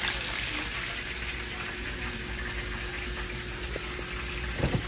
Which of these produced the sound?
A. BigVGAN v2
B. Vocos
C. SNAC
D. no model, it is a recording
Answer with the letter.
D